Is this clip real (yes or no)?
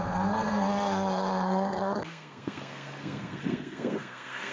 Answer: no